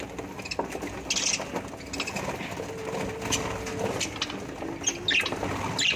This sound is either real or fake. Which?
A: real